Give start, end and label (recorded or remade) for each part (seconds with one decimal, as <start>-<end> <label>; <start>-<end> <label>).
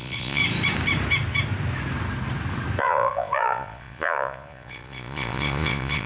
0.0-0.4 remade; 0.4-2.8 recorded; 2.8-6.1 remade